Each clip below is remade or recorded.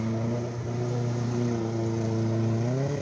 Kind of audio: recorded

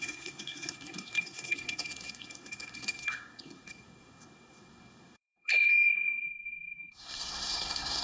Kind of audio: remade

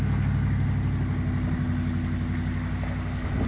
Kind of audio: recorded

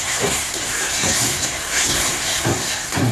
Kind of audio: remade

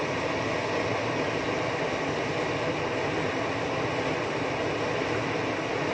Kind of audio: recorded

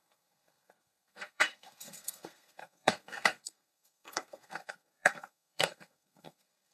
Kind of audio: remade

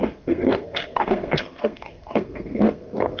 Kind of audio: remade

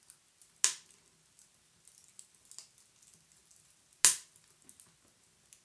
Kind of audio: recorded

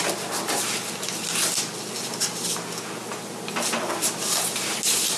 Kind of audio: recorded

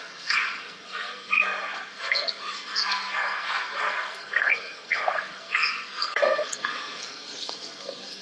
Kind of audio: remade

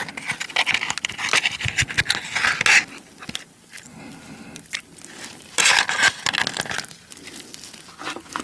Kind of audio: recorded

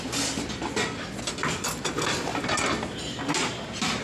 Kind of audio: recorded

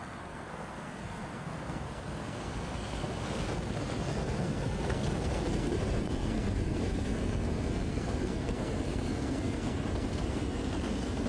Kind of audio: remade